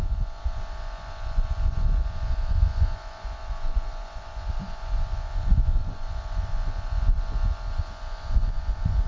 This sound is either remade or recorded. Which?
remade